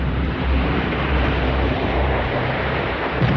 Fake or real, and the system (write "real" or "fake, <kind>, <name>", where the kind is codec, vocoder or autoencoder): fake, vocoder, BigVGAN v2